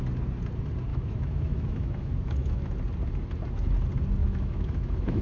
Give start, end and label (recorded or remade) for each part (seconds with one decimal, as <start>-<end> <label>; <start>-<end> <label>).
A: 0.0-0.9 recorded; 0.9-2.7 remade; 2.7-4.2 recorded; 4.2-5.2 remade